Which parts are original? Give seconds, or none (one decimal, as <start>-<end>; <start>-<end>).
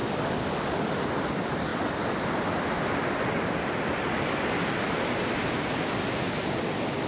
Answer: 0.9-7.1